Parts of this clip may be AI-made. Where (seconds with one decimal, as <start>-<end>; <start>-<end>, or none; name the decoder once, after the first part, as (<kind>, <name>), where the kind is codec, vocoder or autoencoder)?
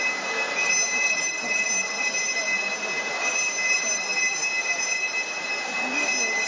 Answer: none